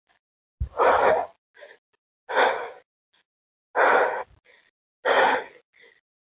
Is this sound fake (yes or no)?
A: no